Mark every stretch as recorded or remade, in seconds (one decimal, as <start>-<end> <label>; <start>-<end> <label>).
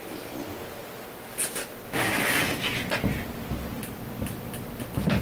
0.0-5.2 recorded